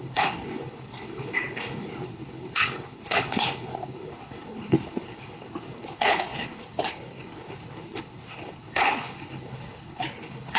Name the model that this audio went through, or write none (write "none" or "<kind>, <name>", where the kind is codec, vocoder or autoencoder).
codec, HILCodec